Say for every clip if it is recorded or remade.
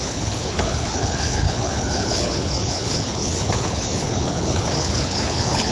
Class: remade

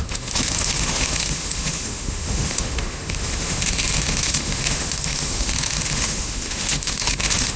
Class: remade